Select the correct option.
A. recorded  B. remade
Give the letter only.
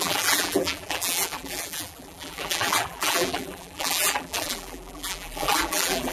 B